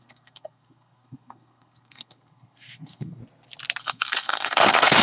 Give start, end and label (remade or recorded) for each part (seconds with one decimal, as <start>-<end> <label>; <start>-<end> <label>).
0.0-3.2 remade; 3.2-3.8 recorded; 3.8-5.0 remade